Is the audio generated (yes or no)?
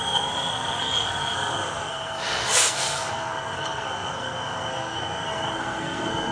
yes